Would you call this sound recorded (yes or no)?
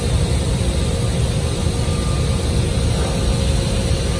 yes